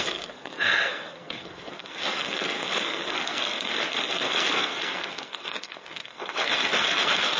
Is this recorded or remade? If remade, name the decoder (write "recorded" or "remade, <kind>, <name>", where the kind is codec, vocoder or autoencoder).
remade, codec, SNAC